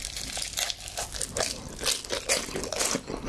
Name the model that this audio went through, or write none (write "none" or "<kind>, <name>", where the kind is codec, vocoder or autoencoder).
none